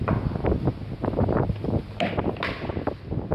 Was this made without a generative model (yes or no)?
yes